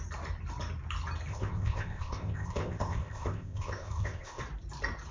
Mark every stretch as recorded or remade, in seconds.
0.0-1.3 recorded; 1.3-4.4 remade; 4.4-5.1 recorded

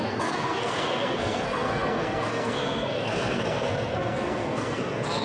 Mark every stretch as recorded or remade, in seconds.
0.0-5.2 remade

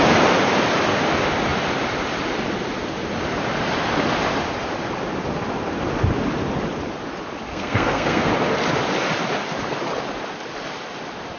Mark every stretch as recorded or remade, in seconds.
0.0-7.5 recorded; 7.5-8.3 remade; 8.3-11.4 recorded

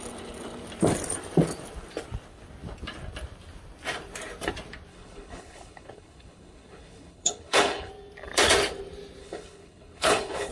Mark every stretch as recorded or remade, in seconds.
0.0-4.9 recorded; 4.9-7.9 remade; 7.9-9.2 recorded; 9.2-10.5 remade

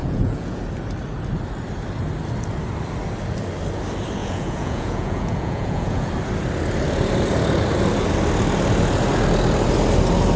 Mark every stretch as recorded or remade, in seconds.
0.0-0.6 remade; 0.6-4.2 recorded; 4.2-6.1 remade; 6.1-10.4 recorded

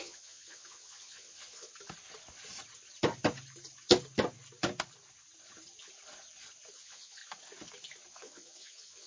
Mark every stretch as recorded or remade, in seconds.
0.0-1.7 remade; 1.7-6.7 recorded; 6.7-7.2 remade; 7.2-8.1 recorded; 8.1-9.1 remade

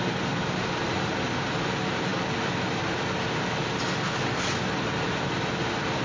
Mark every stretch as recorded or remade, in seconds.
0.0-6.0 recorded